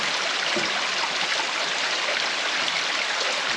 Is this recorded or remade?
recorded